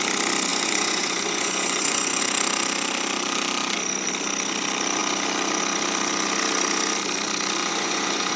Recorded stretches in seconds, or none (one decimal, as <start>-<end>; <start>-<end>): 0.0-0.5; 2.2-7.6